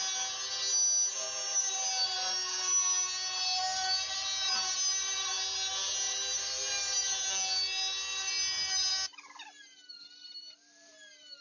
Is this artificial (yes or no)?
no